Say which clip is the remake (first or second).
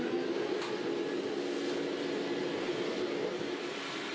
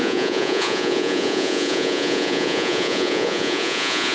second